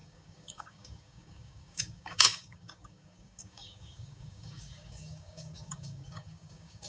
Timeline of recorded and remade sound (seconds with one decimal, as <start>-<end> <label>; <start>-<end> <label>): 0.0-6.9 remade